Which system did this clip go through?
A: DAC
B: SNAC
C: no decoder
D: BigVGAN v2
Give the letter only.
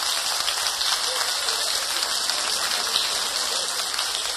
C